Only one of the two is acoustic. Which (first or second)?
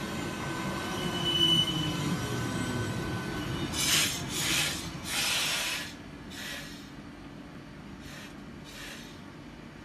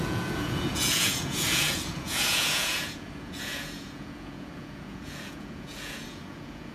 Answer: first